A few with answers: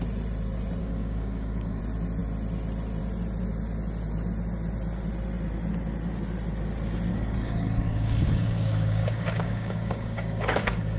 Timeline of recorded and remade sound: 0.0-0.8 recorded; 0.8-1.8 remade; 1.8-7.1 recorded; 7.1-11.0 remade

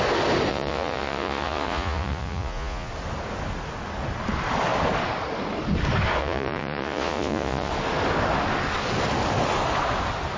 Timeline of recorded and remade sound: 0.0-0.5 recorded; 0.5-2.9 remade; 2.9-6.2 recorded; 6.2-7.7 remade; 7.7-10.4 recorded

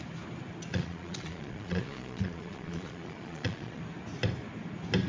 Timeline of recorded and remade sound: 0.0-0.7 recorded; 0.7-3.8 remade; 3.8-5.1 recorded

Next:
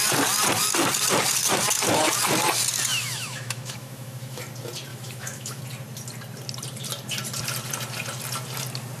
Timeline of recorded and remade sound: 0.0-2.9 recorded; 2.9-4.4 remade; 4.4-4.9 recorded; 4.9-5.6 remade; 5.6-9.0 recorded

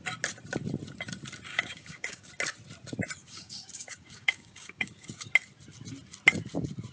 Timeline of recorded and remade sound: 0.0-1.5 recorded; 1.5-2.3 remade; 2.3-3.2 recorded; 3.2-5.3 remade; 5.3-6.9 recorded

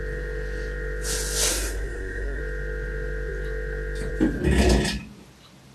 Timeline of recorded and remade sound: 0.0-1.5 recorded; 1.5-2.4 remade; 2.4-5.7 recorded

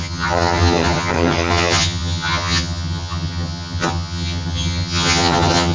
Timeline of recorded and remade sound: 0.0-5.7 remade